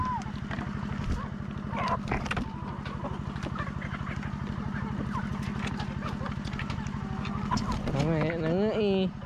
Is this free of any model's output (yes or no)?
yes